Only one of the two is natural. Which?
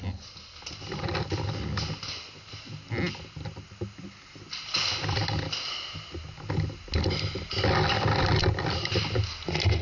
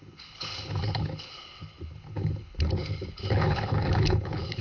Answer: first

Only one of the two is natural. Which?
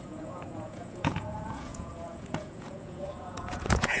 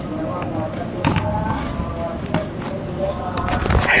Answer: second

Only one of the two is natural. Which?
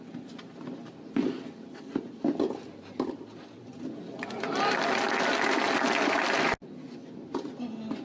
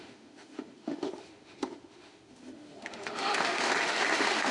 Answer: first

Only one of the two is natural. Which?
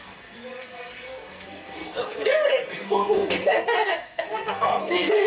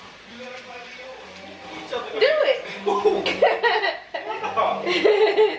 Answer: second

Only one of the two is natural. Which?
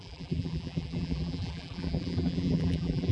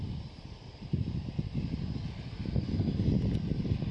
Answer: second